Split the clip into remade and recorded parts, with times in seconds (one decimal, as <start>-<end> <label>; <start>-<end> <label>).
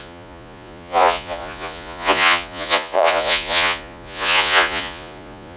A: 0.0-5.6 remade